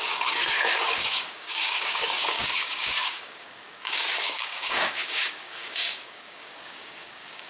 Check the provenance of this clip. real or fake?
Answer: fake